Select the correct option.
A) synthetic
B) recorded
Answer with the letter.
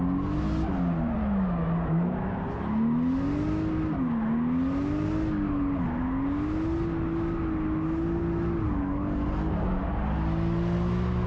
B